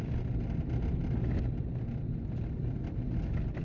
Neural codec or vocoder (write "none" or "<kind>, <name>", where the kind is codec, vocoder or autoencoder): none